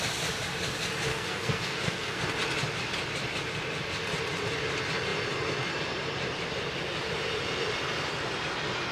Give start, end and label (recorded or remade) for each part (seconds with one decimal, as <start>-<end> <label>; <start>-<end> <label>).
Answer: 0.0-1.1 recorded; 1.1-2.2 remade; 2.2-8.9 recorded